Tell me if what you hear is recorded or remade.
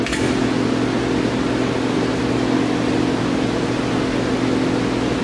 recorded